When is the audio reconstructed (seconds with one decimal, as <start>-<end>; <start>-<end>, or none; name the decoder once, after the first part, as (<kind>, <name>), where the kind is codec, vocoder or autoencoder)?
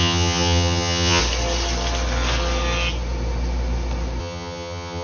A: 0.0-1.2 (vocoder, HiFi-GAN); 4.2-5.0